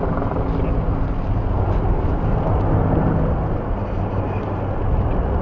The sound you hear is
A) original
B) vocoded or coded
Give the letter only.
A